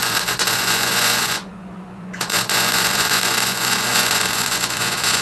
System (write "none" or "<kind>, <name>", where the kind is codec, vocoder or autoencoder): vocoder, Vocos